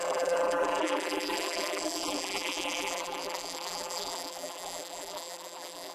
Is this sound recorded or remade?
remade